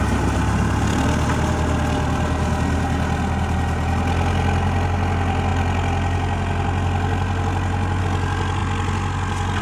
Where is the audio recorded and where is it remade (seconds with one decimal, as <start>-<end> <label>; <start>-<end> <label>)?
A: 0.0-9.6 recorded